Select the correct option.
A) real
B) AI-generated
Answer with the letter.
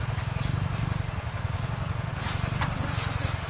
A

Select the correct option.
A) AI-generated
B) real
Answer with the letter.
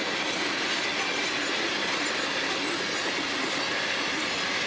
B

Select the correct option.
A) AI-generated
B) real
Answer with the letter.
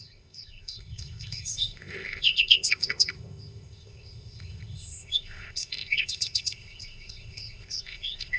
A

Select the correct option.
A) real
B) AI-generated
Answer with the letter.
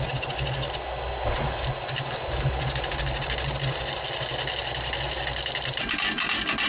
A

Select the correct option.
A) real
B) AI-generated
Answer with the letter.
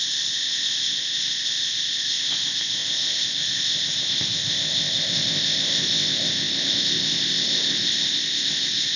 B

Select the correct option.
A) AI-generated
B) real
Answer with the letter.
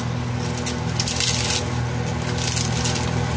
B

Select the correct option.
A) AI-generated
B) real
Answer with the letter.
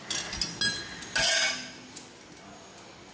B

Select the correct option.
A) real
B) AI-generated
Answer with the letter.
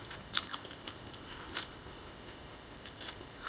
B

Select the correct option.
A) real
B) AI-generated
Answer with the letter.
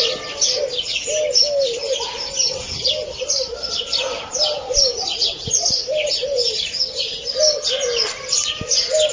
A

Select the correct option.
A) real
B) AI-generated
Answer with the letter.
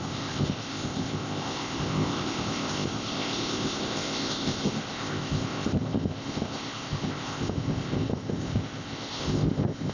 B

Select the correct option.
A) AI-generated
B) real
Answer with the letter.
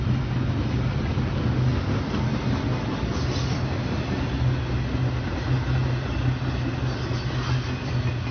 B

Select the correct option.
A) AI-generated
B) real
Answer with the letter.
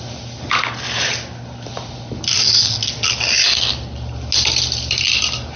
B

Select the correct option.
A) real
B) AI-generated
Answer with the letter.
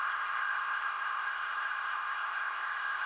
B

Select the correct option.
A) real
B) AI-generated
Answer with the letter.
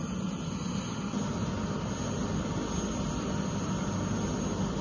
A